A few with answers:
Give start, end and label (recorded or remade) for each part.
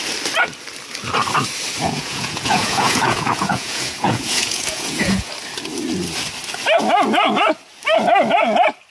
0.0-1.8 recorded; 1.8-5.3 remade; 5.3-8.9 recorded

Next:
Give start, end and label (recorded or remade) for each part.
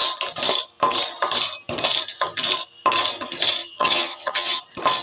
0.0-3.6 recorded; 3.6-4.6 remade; 4.6-5.0 recorded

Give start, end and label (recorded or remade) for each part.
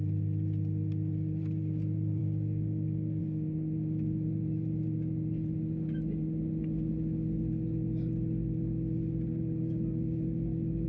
0.0-2.2 recorded; 2.2-3.2 remade; 3.2-10.9 recorded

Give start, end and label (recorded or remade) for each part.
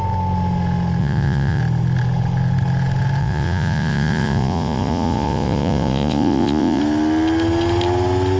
0.0-1.0 recorded; 1.0-1.6 remade; 1.6-3.2 recorded; 3.2-6.8 remade; 6.8-8.4 recorded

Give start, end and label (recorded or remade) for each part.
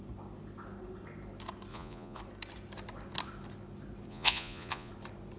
0.0-1.7 recorded; 1.7-2.2 remade; 2.2-4.1 recorded; 4.1-4.9 remade; 4.9-5.4 recorded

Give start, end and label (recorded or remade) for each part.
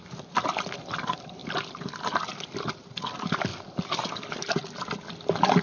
0.0-5.6 recorded